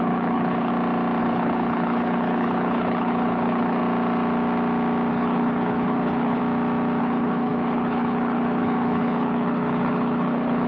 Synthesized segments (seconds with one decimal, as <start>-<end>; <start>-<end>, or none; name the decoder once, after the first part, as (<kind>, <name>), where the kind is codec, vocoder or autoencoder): 0.0-0.7 (codec, HILCodec); 1.2-3.8; 5.1-6.4; 7.0-10.7